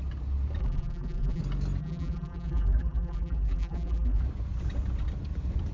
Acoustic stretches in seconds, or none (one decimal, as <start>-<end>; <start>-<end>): 0.0-0.6; 1.4-1.8; 4.2-5.7